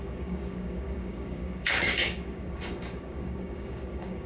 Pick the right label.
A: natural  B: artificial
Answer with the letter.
B